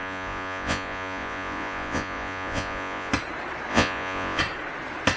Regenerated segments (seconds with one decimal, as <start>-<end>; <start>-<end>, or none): 0.0-3.1; 3.7-4.4